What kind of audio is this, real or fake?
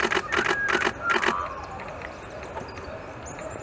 real